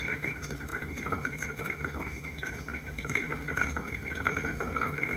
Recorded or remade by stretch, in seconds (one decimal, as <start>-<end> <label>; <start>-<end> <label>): 0.0-5.2 remade